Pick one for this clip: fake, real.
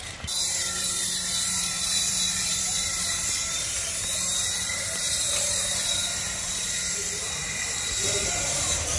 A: fake